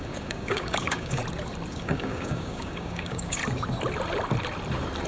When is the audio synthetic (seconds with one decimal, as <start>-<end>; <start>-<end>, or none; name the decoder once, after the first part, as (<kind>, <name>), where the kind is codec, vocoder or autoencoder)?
0.0-1.2 (codec, DAC); 1.7-3.4

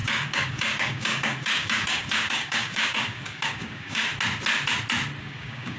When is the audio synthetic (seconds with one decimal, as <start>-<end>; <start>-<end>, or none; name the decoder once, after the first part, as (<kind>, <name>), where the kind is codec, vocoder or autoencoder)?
0.0-4.1 (codec, DAC); 5.2-5.8

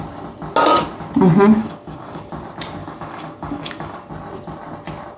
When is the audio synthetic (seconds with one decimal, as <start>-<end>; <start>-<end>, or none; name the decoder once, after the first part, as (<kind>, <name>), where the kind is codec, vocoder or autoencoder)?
1.6-2.3 (codec, DAC); 2.8-4.1

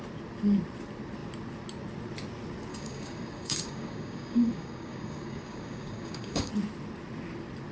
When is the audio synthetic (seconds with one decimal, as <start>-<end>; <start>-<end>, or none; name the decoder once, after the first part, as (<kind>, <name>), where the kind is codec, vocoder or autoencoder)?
2.7-6.5 (codec, DAC)

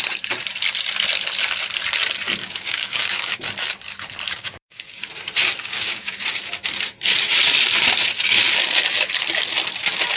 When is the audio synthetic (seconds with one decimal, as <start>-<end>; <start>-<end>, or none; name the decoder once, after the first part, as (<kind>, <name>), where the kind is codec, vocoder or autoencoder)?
2.4-3.4 (codec, DAC); 4.3-5.1; 5.6-6.4

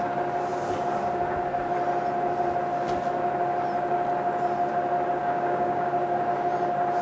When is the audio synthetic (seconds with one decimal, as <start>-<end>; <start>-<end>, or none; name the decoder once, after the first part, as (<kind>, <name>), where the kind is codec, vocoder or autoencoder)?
5.2-5.9 (codec, DAC)